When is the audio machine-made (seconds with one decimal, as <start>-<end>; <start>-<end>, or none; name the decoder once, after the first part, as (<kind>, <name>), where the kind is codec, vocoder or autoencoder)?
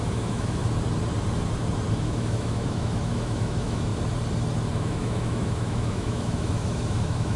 0.0-0.6 (autoencoder, DAC-VAE); 1.9-3.9; 4.7-7.4